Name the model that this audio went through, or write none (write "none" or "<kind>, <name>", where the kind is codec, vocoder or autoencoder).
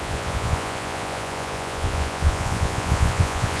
vocoder, Vocos